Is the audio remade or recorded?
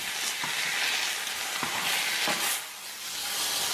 recorded